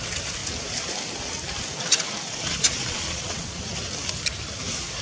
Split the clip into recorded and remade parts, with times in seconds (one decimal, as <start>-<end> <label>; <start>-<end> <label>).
0.0-2.5 recorded; 2.5-3.6 remade; 3.6-5.0 recorded

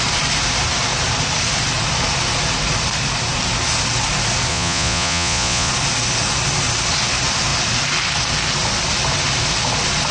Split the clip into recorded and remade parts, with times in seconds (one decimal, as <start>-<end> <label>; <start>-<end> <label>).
0.0-4.5 recorded; 4.5-5.7 remade; 5.7-10.1 recorded

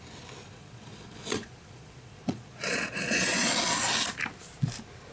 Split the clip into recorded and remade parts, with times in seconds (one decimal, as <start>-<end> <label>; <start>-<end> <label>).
0.0-0.4 recorded; 0.4-3.5 remade; 3.5-5.1 recorded